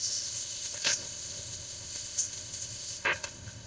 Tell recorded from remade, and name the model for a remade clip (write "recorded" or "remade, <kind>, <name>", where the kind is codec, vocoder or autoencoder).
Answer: remade, codec, ZipCodec